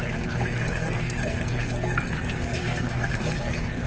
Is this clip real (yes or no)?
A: no